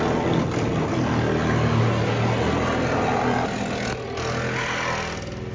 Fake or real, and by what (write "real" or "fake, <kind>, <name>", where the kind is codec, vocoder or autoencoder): real